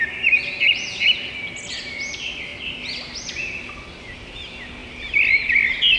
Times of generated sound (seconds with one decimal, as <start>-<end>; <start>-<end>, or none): none